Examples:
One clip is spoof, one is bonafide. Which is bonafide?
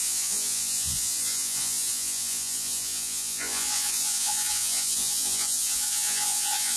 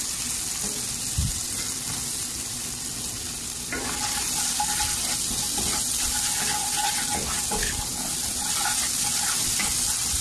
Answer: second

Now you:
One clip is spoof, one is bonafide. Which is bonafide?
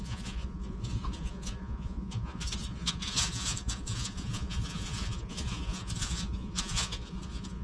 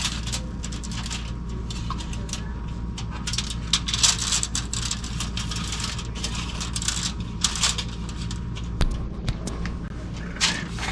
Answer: second